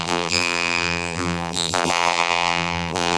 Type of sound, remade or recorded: remade